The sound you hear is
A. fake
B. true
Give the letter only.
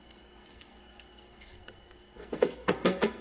A